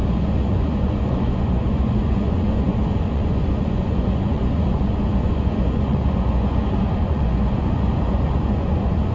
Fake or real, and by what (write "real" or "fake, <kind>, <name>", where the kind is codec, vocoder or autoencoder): fake, vocoder, Vocos